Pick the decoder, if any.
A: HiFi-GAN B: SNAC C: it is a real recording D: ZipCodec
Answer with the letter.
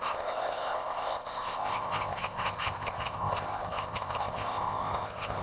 D